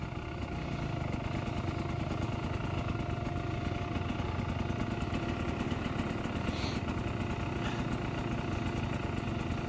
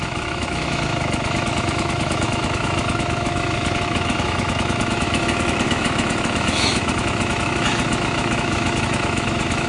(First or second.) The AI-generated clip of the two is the second